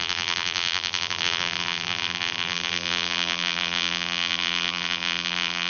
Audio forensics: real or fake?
fake